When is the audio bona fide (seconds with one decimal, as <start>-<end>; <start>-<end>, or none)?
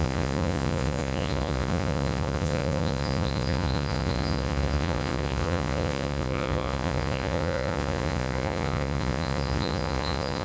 none